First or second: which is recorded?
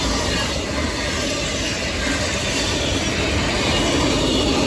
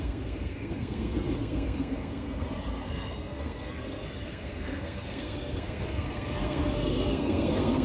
first